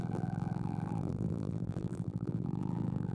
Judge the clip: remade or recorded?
remade